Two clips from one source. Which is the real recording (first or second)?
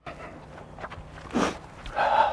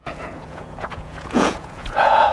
first